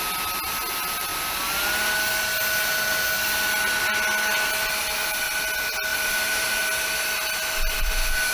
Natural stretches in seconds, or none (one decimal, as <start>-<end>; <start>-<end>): 0.0-5.9; 6.6-8.3